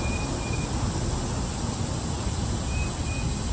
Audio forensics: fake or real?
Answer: real